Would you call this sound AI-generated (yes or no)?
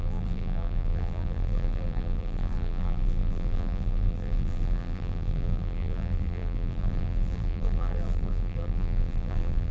yes